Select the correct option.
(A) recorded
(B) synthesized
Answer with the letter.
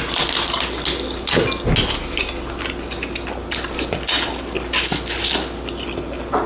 A